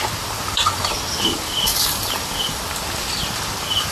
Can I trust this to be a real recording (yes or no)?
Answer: yes